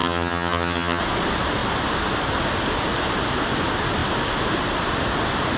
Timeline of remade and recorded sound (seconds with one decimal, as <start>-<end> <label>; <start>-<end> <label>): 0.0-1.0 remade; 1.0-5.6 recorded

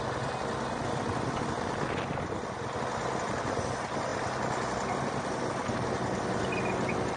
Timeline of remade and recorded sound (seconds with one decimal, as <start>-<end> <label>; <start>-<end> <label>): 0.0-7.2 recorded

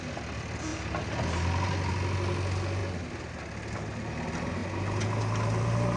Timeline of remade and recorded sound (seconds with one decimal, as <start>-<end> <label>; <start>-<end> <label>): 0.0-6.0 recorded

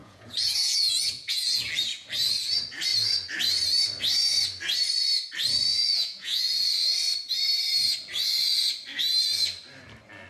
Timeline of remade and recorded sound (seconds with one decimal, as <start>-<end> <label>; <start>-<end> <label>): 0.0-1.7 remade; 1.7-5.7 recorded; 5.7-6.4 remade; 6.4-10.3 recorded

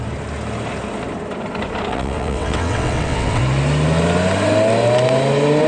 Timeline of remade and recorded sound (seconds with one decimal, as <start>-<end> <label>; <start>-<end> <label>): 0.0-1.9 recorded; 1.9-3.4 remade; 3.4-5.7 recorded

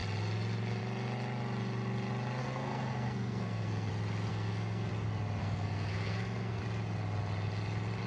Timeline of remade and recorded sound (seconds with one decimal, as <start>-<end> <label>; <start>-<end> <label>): 0.0-2.4 recorded; 2.4-3.9 remade; 3.9-4.3 recorded; 4.3-4.9 remade; 4.9-5.4 recorded; 5.4-6.6 remade; 6.6-8.1 recorded

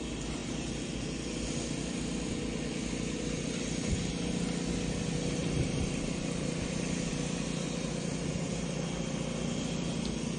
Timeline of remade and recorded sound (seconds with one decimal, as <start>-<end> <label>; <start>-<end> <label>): 0.0-5.4 recorded; 5.4-7.1 remade; 7.1-10.4 recorded